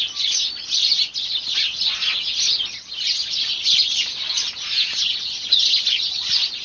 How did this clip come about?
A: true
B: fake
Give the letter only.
A